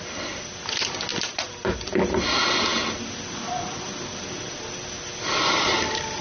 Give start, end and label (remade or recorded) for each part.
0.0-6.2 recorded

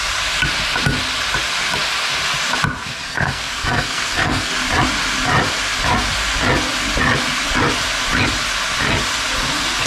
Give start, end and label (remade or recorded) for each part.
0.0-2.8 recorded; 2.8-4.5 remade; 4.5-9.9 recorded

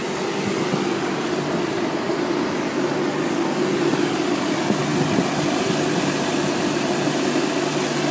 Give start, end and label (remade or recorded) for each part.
0.0-8.1 recorded